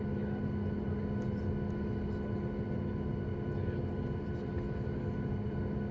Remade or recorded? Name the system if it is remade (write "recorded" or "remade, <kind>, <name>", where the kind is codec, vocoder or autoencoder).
recorded